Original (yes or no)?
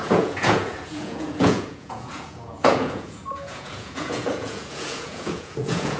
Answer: no